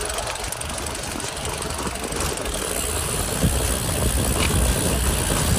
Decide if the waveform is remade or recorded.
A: recorded